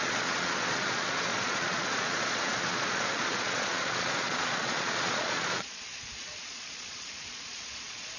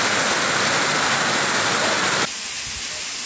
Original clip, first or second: second